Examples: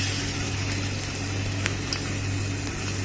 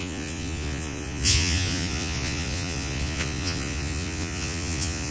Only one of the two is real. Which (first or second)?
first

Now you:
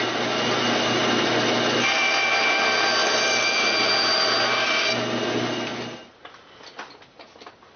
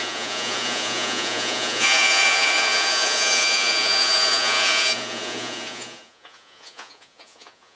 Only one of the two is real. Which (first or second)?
first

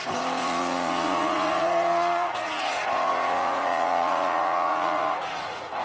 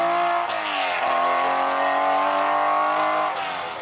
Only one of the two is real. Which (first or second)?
second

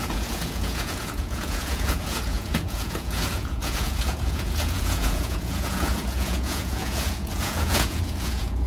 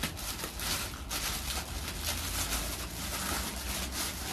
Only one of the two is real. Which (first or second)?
second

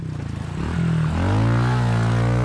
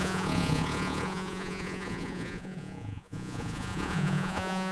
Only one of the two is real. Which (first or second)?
first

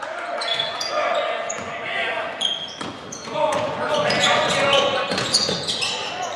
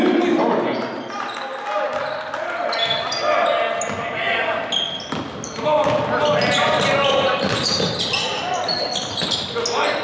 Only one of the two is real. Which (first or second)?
second